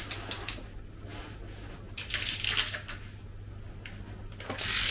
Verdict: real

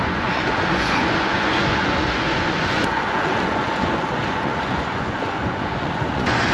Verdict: fake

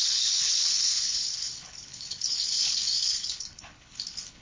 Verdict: fake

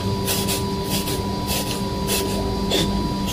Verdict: real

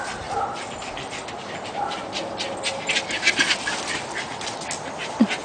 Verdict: real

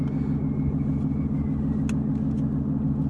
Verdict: real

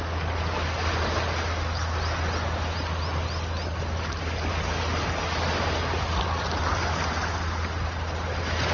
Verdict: real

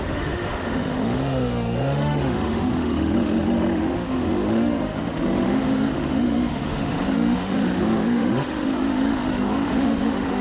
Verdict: fake